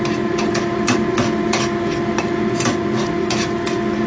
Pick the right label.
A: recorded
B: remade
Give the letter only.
A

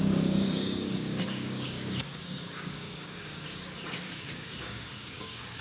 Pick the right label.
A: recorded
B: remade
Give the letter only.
B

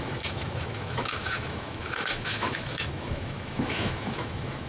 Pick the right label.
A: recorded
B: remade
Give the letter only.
B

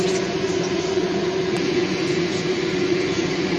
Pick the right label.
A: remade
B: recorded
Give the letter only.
A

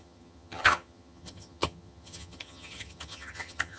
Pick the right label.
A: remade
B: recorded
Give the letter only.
A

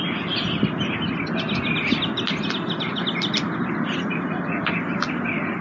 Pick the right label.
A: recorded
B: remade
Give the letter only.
A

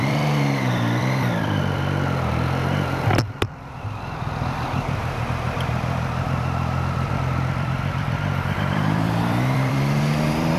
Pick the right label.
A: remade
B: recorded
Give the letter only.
A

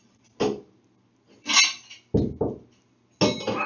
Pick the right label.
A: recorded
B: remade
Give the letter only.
A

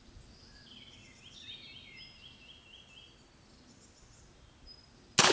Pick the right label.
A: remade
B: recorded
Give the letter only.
B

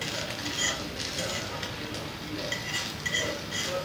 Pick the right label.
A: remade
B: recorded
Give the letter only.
B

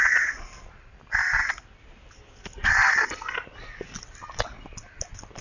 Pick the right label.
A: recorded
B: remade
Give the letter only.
A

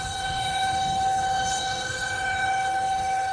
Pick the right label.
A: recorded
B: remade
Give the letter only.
B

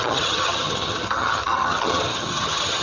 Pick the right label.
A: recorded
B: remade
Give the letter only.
B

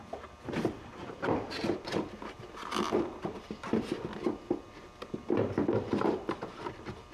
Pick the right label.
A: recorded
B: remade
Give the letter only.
B